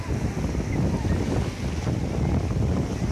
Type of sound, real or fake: real